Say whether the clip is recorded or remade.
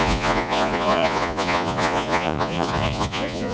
remade